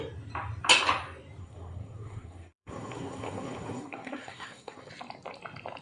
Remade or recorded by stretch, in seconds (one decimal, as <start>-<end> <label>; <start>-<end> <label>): 0.0-1.4 recorded; 1.4-4.9 remade; 4.9-5.8 recorded